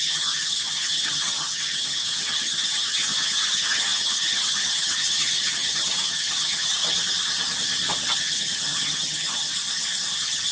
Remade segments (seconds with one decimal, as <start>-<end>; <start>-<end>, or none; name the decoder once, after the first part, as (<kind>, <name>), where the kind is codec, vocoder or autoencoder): 0.0-6.8 (vocoder, HiFi-GAN); 8.1-9.5; 10.1-10.5